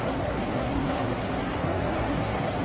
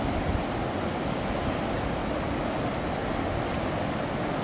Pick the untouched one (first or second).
second